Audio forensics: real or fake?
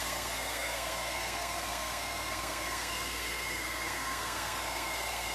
fake